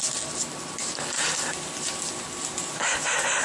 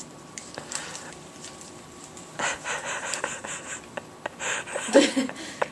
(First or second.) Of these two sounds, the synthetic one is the second